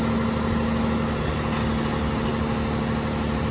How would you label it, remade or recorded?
recorded